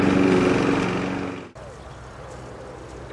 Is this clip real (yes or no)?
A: yes